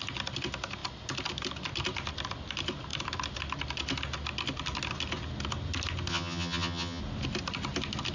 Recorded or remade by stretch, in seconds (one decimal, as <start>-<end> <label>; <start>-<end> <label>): 0.0-6.1 recorded; 6.1-7.0 remade; 7.0-8.1 recorded